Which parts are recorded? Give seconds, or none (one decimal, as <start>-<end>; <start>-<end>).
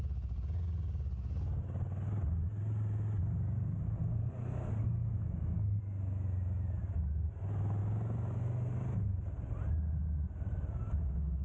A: 0.0-11.4